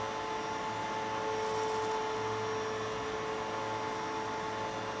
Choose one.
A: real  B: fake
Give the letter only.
A